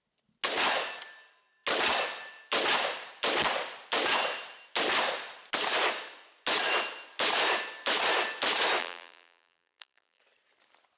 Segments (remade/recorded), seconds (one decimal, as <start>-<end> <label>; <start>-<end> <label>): 0.0-8.8 recorded; 8.8-10.2 remade; 10.2-11.0 recorded